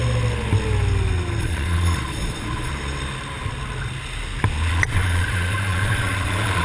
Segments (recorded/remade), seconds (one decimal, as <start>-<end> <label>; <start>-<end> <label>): 0.0-1.4 recorded; 1.4-2.7 remade; 2.7-4.7 recorded; 4.7-6.6 remade